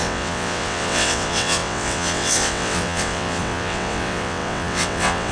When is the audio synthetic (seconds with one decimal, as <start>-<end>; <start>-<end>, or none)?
0.0-5.3